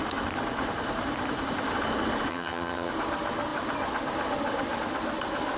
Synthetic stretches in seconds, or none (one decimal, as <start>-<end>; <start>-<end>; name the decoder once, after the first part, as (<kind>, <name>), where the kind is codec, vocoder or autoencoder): 2.3-2.9 (vocoder, HiFi-GAN)

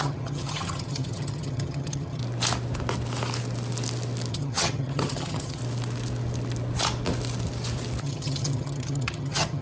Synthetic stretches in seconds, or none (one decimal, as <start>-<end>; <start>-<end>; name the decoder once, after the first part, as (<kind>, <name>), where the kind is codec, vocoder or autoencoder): 0.0-2.2 (vocoder, HiFi-GAN); 4.3-5.6; 8.0-9.6

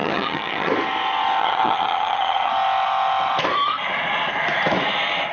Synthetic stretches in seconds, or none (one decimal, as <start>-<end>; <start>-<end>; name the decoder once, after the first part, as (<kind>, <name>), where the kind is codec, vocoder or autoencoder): 0.0-0.7 (vocoder, HiFi-GAN); 1.4-2.5

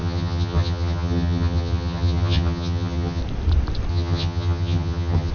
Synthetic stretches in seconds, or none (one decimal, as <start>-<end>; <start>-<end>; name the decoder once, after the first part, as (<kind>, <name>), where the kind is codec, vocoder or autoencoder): 0.0-3.2 (vocoder, HiFi-GAN); 3.9-5.3

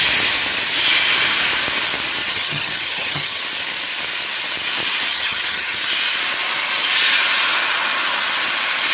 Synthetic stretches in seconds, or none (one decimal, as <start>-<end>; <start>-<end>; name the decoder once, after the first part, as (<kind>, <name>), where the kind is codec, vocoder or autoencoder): 2.2-3.4 (vocoder, HiFi-GAN); 5.1-5.8

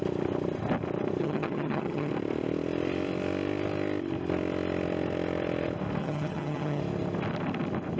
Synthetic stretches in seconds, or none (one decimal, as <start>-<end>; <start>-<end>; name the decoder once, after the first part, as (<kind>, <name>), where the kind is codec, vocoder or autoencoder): 1.2-2.1 (vocoder, HiFi-GAN); 6.0-6.8

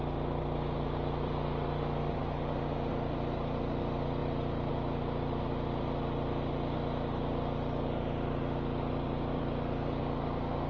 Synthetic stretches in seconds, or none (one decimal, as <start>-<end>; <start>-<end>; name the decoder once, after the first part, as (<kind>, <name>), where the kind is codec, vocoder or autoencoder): none

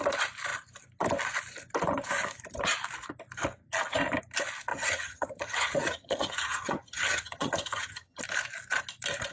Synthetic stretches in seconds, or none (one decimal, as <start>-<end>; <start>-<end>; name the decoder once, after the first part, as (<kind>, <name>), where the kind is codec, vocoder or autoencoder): 4.7-8.2 (vocoder, HiFi-GAN)